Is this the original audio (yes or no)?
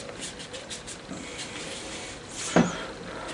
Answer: yes